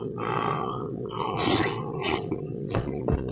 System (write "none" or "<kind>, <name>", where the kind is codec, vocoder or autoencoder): vocoder, Vocos